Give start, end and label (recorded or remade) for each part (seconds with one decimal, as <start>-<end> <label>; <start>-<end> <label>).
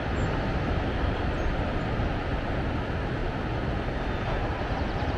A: 0.0-5.2 recorded